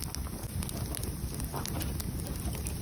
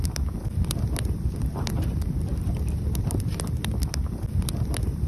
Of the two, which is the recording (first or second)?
first